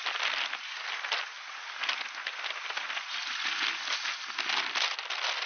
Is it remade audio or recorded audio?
recorded